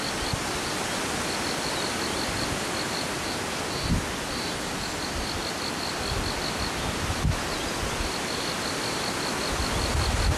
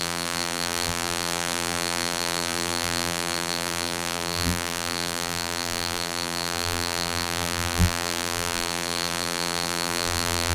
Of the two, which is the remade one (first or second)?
second